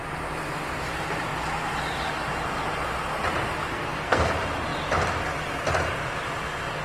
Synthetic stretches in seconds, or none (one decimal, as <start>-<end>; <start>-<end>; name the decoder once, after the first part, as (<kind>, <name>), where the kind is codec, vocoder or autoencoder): 3.7-4.3 (codec, SNAC)